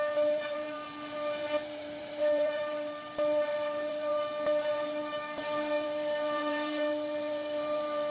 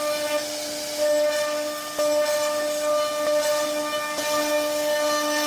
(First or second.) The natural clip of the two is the second